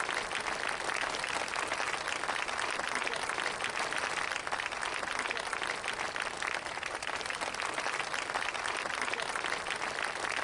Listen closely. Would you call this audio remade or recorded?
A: recorded